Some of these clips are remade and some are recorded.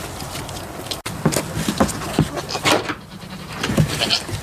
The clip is recorded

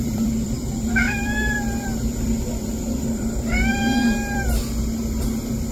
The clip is remade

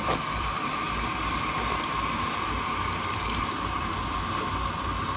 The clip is remade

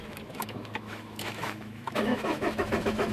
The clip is remade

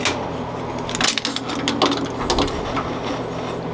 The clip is recorded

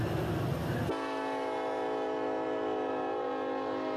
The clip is recorded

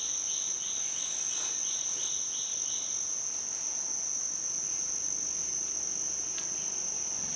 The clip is recorded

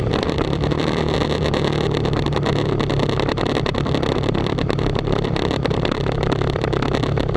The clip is remade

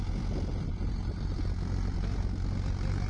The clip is recorded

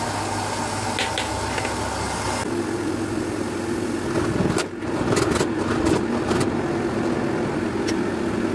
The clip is recorded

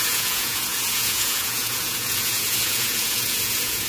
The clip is remade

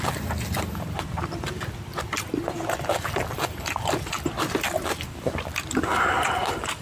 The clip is remade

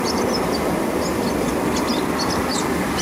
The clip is recorded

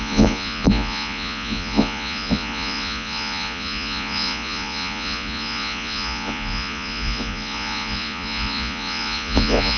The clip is remade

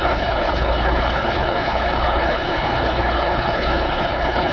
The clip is remade